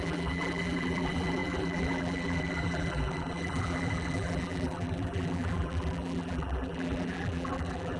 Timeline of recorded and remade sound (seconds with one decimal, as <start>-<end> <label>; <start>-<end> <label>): 0.0-8.0 remade